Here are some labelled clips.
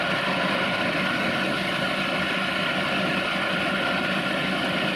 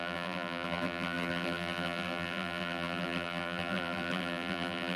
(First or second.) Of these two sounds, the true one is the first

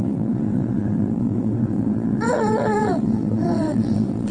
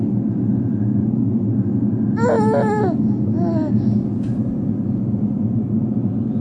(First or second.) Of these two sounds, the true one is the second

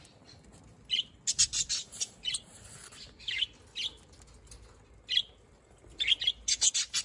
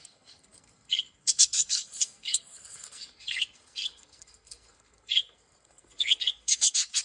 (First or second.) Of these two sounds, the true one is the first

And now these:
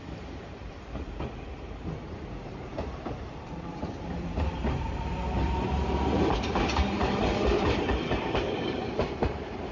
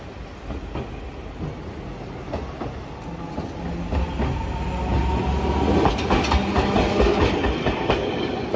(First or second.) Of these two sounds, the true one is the second